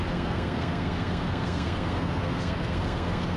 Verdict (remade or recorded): remade